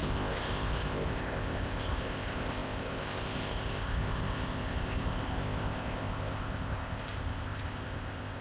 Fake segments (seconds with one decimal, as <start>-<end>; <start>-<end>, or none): 0.0-8.4

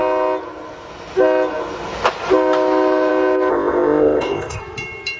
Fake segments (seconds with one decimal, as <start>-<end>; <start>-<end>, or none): 3.5-4.6

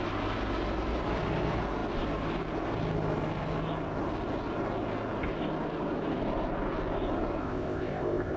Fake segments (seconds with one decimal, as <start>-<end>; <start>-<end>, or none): 7.4-8.4

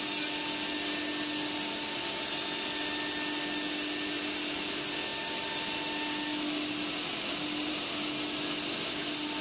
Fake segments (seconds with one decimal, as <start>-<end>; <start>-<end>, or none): none

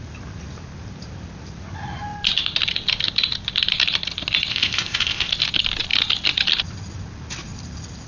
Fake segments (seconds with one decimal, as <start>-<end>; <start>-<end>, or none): 4.5-5.3